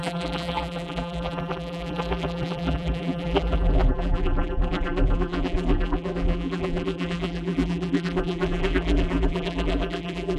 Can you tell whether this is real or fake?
fake